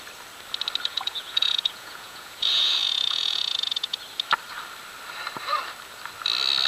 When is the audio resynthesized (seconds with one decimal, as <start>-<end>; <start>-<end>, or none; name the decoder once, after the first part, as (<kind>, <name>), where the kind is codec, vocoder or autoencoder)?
0.9-4.0 (vocoder, Vocos)